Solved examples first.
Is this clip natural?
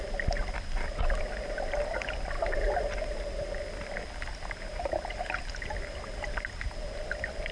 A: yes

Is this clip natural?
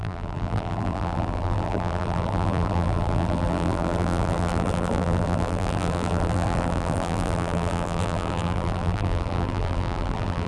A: no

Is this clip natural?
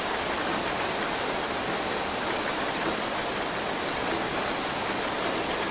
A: yes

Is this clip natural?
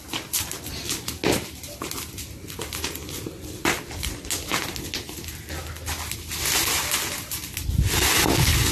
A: yes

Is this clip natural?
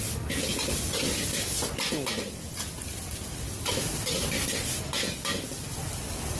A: yes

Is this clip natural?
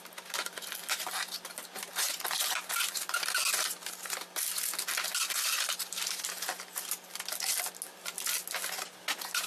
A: yes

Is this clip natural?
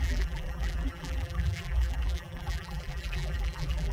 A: no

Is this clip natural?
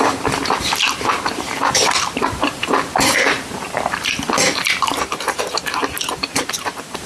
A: no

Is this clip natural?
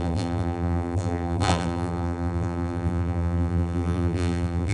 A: no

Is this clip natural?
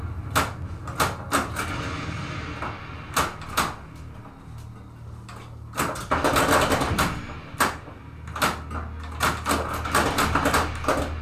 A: yes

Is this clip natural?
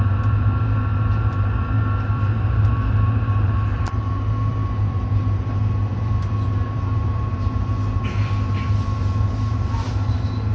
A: no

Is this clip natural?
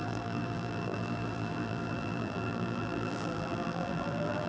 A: no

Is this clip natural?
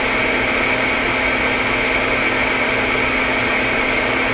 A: yes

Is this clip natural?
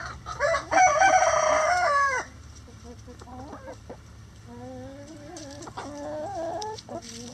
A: no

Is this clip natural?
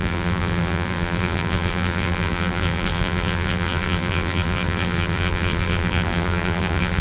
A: no